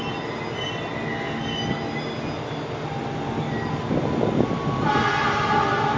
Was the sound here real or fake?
real